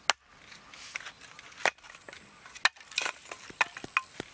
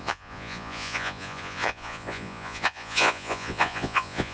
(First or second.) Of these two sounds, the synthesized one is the second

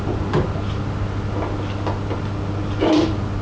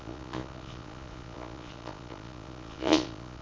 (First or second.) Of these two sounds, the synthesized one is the second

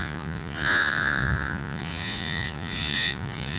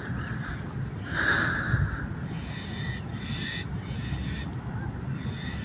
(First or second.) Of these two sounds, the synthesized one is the first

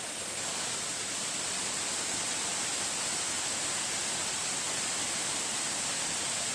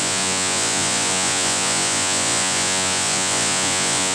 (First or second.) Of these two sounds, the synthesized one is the second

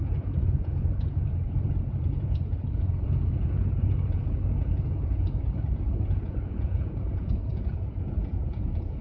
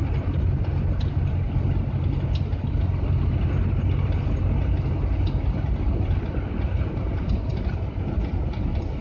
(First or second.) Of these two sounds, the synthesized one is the first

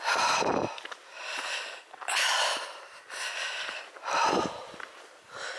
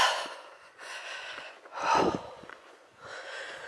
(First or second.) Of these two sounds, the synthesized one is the second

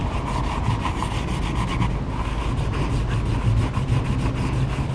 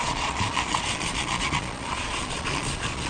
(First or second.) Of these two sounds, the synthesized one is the second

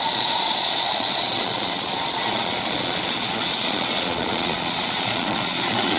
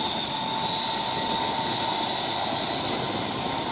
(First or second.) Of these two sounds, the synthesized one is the first